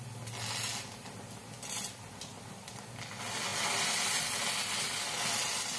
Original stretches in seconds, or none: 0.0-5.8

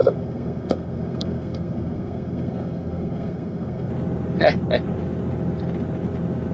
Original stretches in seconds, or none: 3.9-6.5

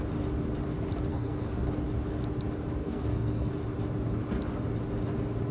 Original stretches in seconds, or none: 0.0-1.1; 1.7-2.8; 3.5-5.5

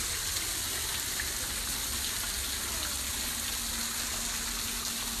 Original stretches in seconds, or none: 0.0-5.2

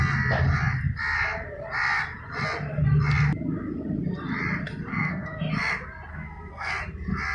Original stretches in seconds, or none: 0.0-4.9; 5.4-6.1; 6.7-7.3

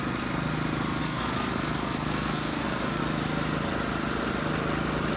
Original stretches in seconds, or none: 0.0-1.0; 3.0-5.2